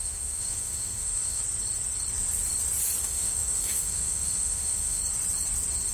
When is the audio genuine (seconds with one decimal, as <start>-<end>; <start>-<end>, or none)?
1.4-3.0; 5.0-5.9